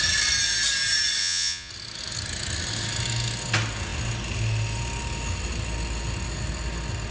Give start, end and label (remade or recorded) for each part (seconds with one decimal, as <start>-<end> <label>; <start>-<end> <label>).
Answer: 0.0-1.2 recorded; 1.2-1.7 remade; 1.7-7.1 recorded